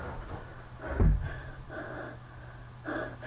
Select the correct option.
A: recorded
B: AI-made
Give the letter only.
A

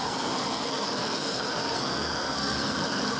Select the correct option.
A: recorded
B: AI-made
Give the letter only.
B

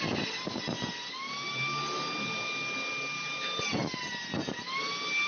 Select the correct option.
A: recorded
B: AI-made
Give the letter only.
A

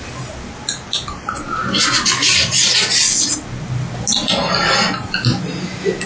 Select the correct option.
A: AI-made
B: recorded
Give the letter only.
B